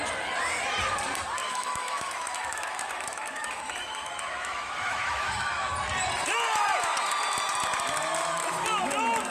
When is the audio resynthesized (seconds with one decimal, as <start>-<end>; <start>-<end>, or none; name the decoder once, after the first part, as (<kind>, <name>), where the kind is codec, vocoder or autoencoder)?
1.4-5.7 (autoencoder, DAC-VAE)